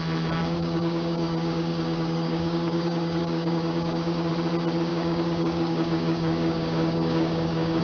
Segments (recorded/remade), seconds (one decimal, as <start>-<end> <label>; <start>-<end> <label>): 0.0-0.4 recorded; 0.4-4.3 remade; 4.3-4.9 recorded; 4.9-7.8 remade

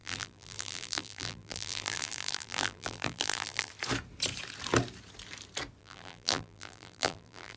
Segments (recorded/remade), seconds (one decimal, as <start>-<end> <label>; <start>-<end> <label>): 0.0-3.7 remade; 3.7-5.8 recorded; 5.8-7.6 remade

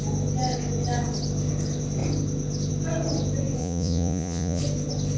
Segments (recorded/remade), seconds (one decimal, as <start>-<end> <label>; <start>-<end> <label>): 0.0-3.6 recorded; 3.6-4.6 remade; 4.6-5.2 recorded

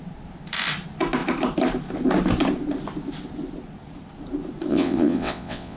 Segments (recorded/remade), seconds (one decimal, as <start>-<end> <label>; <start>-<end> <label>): 0.0-4.7 recorded; 4.7-5.8 remade